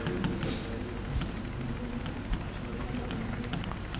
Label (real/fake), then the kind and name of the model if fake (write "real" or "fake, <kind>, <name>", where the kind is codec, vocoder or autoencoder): real